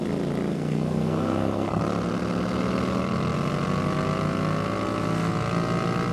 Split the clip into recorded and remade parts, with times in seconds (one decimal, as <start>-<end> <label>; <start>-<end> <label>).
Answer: 0.0-0.5 recorded; 0.5-1.8 remade; 1.8-6.1 recorded